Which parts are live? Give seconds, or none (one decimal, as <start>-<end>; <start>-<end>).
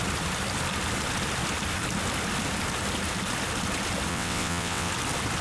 0.0-4.1; 4.9-5.4